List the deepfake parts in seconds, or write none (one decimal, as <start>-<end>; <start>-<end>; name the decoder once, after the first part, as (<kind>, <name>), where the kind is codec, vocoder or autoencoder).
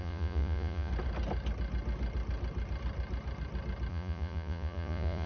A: 0.0-0.9 (vocoder, Vocos); 3.9-5.3